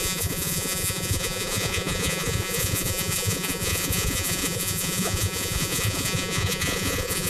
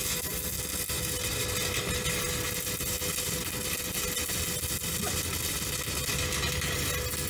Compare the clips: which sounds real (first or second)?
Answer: second